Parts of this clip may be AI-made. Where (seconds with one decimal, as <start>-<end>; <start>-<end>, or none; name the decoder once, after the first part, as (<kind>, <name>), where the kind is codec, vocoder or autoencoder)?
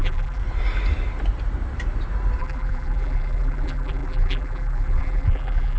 0.0-0.4 (vocoder, BigVGAN v2); 2.4-5.8